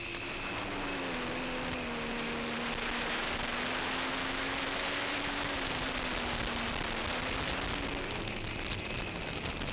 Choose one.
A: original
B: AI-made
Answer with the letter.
A